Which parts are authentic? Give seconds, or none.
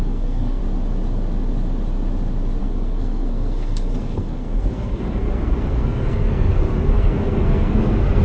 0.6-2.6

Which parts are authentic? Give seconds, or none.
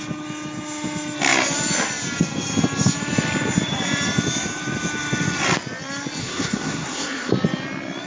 0.0-6.2; 7.3-8.1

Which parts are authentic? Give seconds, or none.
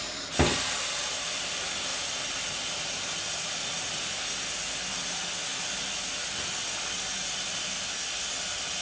0.0-8.8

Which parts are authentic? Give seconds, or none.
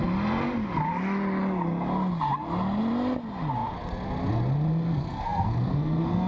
0.0-4.7